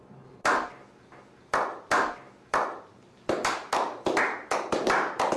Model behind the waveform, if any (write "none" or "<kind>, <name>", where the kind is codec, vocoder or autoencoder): none